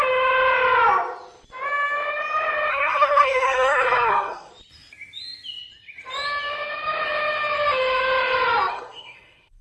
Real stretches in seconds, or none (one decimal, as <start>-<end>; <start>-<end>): 0.0-2.7; 4.5-8.7